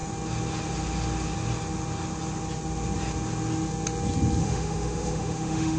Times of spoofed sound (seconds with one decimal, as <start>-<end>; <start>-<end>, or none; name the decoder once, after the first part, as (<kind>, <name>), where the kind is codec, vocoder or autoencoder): 4.4-5.8 (autoencoder, DAC-VAE)